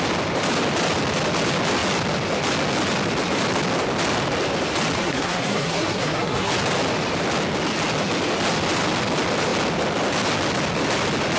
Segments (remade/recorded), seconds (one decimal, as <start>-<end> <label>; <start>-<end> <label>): 0.0-5.0 recorded; 5.0-6.5 remade; 6.5-11.4 recorded